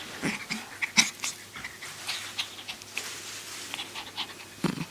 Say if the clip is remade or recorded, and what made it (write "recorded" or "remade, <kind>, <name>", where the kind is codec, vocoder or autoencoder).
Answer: recorded